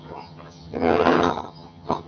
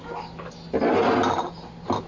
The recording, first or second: second